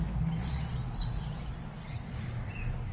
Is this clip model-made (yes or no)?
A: no